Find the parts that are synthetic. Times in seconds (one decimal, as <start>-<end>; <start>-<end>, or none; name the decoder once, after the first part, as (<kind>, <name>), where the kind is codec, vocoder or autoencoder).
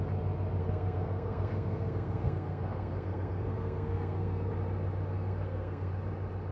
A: 0.6-4.5 (codec, SNAC); 5.1-5.9